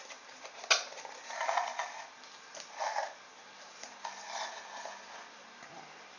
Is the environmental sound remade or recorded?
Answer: recorded